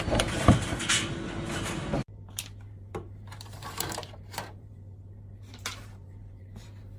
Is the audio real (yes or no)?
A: no